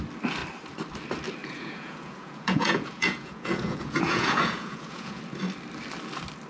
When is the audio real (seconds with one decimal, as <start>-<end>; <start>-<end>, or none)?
0.0-1.4; 5.2-6.5